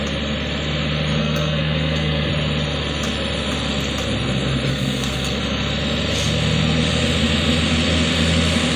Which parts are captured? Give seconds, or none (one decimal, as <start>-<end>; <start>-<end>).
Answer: 0.0-1.2; 2.3-4.7; 5.4-8.8